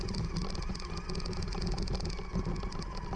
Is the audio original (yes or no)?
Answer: yes